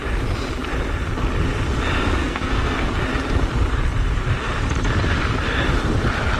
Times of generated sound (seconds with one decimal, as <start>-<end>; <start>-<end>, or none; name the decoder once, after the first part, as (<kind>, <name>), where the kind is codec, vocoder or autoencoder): 2.2-2.9 (codec, SNAC)